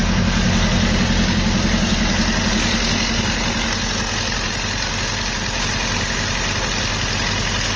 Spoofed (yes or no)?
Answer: no